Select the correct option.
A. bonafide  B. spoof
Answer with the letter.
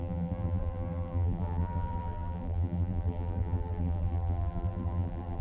B